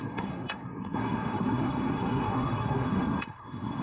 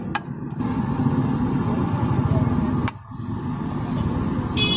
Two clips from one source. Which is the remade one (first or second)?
first